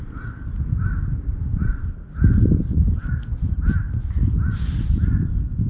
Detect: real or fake real